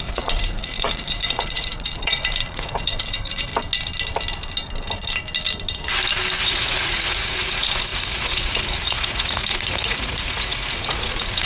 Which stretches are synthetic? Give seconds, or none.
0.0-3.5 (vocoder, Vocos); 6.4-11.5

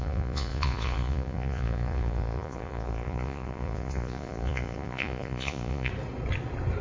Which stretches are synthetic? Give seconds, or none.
0.0-5.9 (vocoder, Vocos)